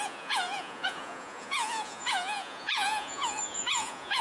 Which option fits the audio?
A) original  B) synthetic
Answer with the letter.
B